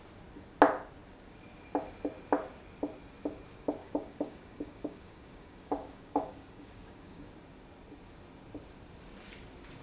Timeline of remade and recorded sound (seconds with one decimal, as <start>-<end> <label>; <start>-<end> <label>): 0.0-3.8 recorded; 3.8-7.3 remade; 7.3-9.8 recorded